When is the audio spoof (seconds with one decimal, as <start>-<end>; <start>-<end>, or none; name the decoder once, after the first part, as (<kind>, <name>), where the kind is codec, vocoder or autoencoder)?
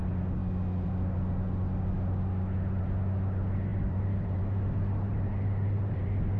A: 3.7-4.4 (vocoder, BigVGAN v2); 5.1-6.4